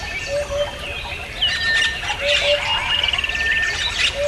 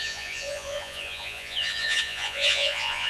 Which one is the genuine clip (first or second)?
first